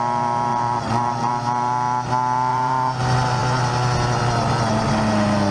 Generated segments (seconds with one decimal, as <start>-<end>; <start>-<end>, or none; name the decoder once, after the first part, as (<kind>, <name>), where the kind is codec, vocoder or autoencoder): 0.5-1.3 (vocoder, BigVGAN v2); 2.5-3.0